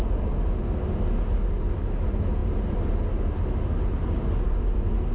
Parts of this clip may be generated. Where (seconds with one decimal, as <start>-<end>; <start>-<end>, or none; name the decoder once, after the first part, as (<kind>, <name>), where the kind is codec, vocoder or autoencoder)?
none